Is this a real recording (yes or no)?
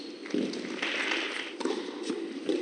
yes